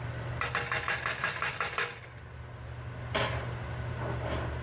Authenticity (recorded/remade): recorded